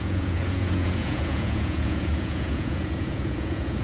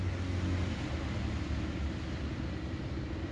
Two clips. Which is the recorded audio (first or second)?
second